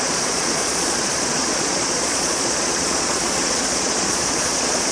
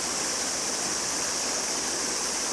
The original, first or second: second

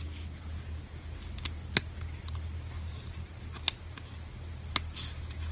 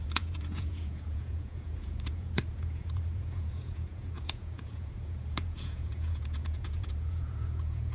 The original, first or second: first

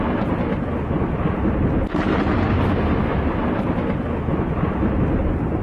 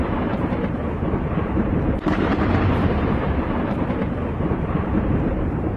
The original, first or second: first